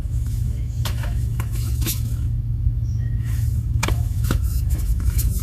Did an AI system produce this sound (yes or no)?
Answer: yes